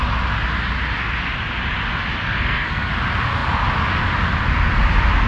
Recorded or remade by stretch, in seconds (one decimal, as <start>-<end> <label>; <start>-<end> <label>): 0.0-2.2 recorded; 2.2-2.9 remade; 2.9-5.3 recorded